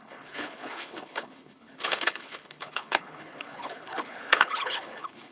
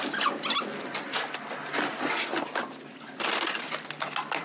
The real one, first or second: second